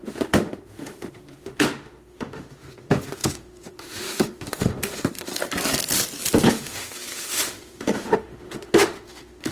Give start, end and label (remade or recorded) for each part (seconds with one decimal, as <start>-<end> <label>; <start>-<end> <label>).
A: 0.0-5.3 remade; 5.3-6.5 recorded; 6.5-9.5 remade